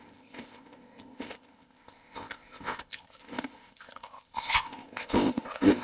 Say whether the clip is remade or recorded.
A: remade